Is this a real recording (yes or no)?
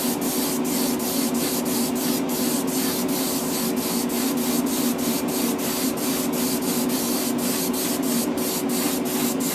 yes